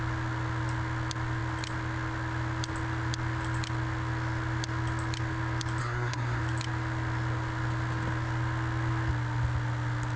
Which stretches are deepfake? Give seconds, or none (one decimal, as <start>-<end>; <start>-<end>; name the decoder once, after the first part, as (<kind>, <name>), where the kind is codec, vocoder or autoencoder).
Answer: 5.8-6.4 (codec, SNAC)